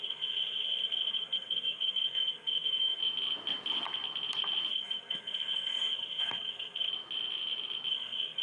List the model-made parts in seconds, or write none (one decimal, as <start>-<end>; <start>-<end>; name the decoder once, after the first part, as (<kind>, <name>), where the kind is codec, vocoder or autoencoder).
0.0-3.0 (codec, SNAC); 4.7-6.9; 7.9-8.4